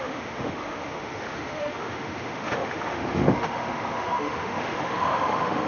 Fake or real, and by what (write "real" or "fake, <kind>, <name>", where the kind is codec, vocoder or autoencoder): fake, autoencoder, DAC-VAE